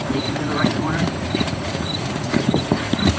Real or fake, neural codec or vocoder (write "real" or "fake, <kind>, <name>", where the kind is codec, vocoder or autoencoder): fake, vocoder, Vocos